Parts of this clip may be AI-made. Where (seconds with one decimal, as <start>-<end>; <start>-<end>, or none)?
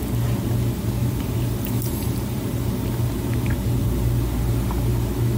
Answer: 1.0-3.1; 3.8-4.4